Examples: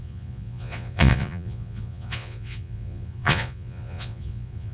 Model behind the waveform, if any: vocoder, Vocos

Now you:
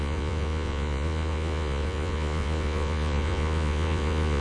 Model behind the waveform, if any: vocoder, Vocos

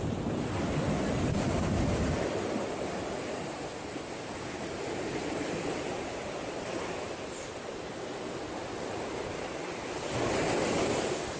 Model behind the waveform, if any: none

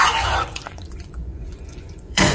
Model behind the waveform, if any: vocoder, Vocos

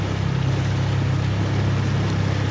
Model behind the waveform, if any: none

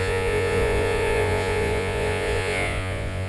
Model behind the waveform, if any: vocoder, Vocos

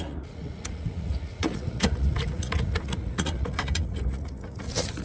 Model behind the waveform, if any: vocoder, Vocos